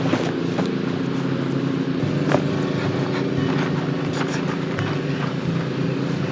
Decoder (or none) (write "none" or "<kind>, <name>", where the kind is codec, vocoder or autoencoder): none